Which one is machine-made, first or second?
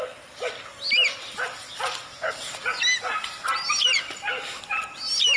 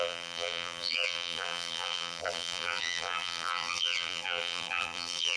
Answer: second